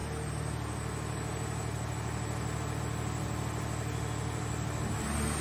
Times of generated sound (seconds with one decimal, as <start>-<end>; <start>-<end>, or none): none